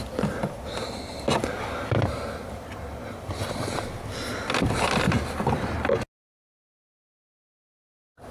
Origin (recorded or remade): recorded